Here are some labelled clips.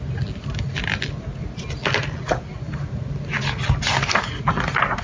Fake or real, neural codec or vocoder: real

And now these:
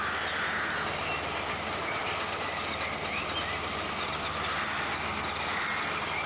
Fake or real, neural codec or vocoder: real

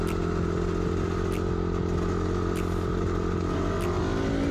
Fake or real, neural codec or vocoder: real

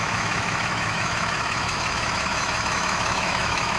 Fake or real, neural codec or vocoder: fake, autoencoder, DAC-VAE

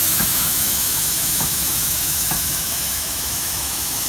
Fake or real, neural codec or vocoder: fake, autoencoder, DAC-VAE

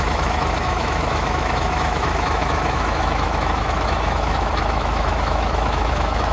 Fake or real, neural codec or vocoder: fake, autoencoder, DAC-VAE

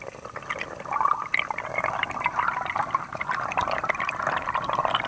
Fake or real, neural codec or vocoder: real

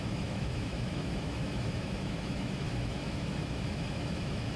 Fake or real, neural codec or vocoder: fake, autoencoder, DAC-VAE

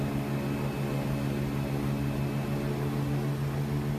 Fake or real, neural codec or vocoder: real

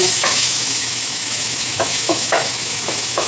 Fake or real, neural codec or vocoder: fake, autoencoder, DAC-VAE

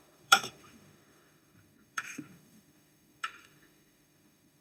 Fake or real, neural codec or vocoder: fake, autoencoder, DAC-VAE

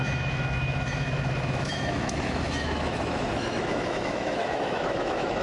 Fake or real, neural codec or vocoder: fake, autoencoder, DAC-VAE